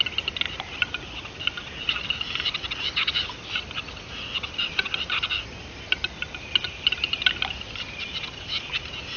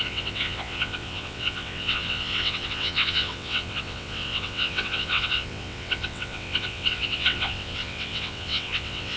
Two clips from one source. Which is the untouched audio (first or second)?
first